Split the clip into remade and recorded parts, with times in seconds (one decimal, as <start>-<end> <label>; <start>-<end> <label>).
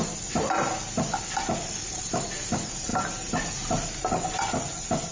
0.0-5.1 recorded